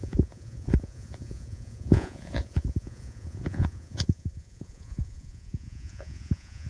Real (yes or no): no